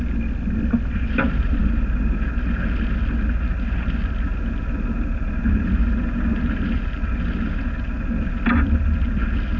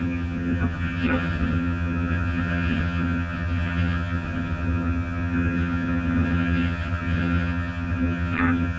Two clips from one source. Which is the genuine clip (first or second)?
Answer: first